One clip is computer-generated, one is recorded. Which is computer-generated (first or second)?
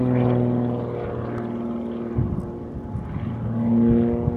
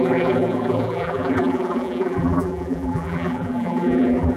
second